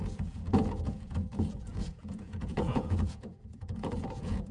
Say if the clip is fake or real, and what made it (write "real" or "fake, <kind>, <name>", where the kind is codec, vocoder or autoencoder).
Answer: fake, vocoder, Vocos